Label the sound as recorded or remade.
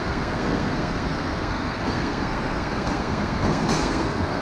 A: remade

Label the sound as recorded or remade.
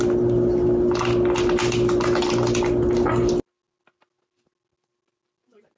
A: recorded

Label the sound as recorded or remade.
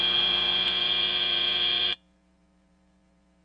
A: remade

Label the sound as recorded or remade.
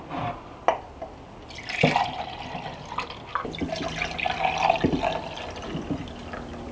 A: recorded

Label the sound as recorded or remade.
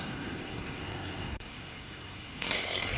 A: remade